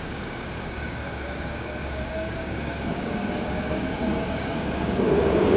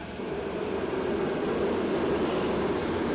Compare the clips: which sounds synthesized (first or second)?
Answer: first